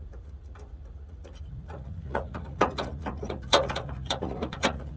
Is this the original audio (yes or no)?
no